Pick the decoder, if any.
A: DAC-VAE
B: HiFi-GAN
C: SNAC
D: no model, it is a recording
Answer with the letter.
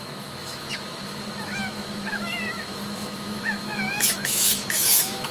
A